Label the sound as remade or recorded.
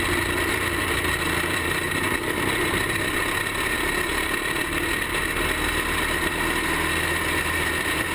remade